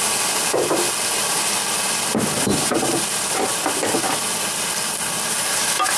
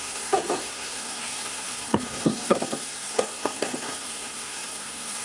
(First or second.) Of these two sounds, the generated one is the second